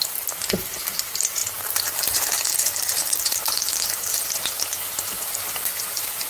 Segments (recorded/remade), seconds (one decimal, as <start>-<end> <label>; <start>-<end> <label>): 0.0-6.3 remade